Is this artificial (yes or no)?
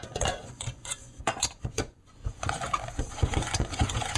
yes